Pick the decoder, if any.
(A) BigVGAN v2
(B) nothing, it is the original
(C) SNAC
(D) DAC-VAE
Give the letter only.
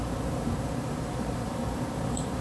A